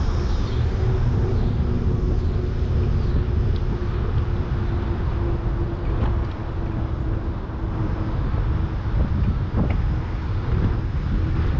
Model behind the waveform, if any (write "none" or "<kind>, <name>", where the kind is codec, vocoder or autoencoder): none